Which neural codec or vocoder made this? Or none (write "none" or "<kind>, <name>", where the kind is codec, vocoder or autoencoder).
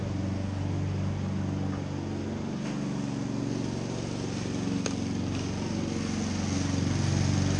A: none